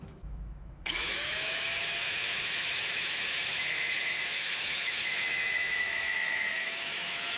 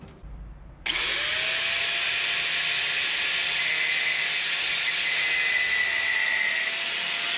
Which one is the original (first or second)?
second